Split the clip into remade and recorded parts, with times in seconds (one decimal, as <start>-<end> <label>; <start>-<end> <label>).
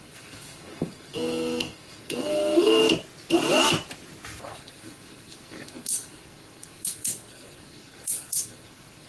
0.0-2.8 remade; 2.8-4.4 recorded; 4.4-9.1 remade